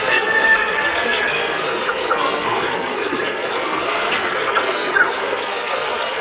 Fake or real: fake